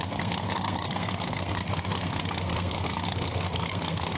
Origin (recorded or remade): remade